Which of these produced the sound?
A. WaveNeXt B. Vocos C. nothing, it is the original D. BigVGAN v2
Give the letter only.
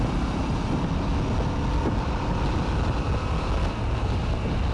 C